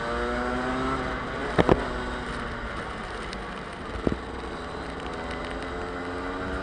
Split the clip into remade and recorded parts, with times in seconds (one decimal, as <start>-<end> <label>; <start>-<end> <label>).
0.0-6.6 recorded